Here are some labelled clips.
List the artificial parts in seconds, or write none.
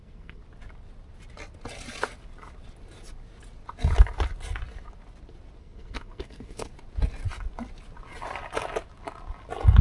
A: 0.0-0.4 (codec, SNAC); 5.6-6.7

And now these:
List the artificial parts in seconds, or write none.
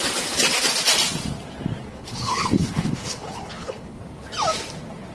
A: 1.9-4.0 (codec, HILCodec)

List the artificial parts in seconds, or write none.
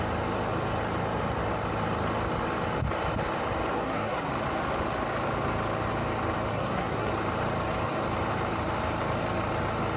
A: 3.7-4.3 (codec, SNAC); 6.5-7.1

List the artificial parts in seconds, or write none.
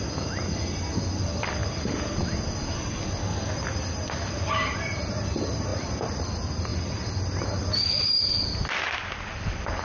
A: 6.7-7.5 (vocoder, BigVGAN v2)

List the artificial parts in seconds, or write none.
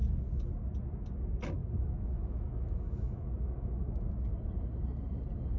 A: 1.6-4.1 (autoencoder, DAC-VAE)